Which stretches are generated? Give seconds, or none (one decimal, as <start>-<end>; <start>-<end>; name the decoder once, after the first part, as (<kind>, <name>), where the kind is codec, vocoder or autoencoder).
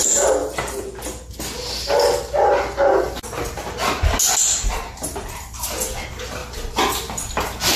none